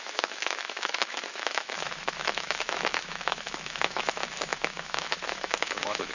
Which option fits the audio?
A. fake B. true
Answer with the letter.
A